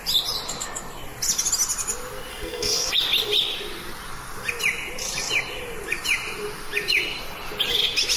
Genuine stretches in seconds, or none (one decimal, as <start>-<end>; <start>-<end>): 0.0-2.3; 2.9-8.2